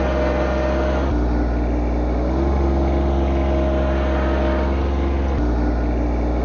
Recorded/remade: recorded